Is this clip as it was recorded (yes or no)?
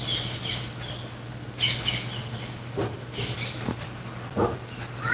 yes